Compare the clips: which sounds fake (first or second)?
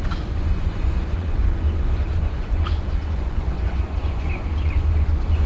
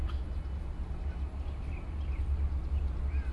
first